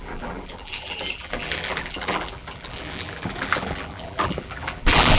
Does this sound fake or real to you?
fake